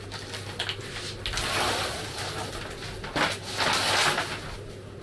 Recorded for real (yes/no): yes